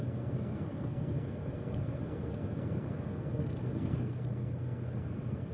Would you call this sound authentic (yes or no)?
no